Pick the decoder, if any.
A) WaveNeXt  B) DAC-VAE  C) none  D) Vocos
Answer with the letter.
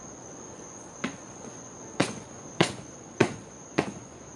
D